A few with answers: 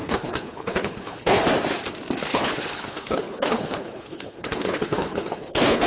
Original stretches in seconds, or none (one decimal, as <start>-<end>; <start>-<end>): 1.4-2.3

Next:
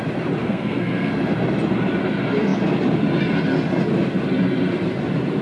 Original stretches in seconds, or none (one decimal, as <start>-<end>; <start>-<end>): 0.0-0.4; 1.1-5.4

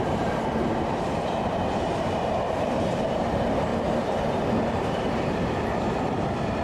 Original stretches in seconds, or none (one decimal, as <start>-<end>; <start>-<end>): 3.7-4.7

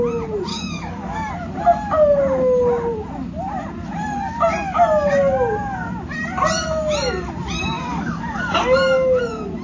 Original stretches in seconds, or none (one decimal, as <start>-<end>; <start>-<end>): 0.0-0.5; 1.3-7.9; 9.2-9.6

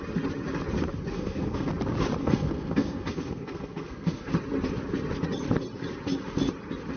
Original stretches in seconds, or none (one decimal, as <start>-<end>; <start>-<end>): 0.0-1.1; 1.7-2.2; 4.3-7.0

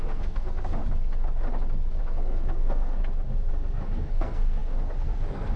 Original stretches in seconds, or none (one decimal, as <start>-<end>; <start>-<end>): 0.8-2.0; 3.0-3.5

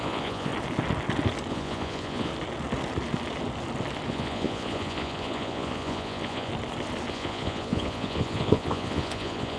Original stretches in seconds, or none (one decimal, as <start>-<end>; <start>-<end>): 0.5-1.5; 2.3-4.1; 6.5-7.1